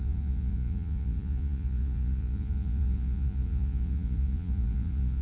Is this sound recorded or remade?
remade